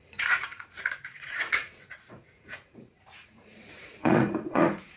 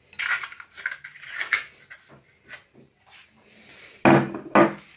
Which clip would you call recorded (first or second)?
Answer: second